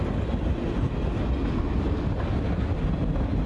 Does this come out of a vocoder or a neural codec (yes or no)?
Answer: no